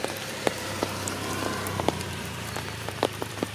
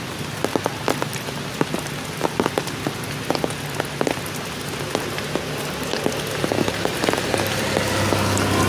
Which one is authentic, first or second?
second